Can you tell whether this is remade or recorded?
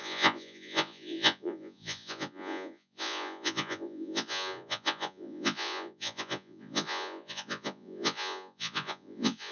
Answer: remade